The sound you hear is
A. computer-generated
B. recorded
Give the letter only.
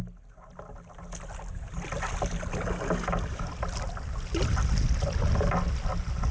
B